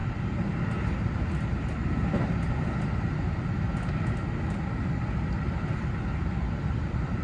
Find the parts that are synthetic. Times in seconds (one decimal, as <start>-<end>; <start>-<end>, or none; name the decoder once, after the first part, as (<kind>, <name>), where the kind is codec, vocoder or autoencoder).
none